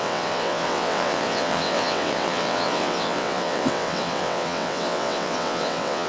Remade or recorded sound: remade